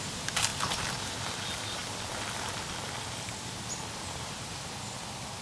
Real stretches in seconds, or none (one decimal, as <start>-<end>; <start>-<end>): 0.0-5.4